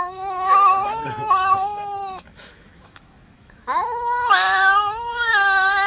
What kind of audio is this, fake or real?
fake